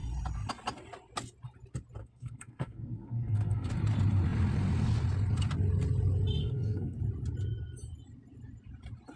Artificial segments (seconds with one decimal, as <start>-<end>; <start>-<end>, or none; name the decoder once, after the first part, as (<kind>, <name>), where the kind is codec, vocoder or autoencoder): 2.0-3.7 (codec, SNAC); 6.4-7.0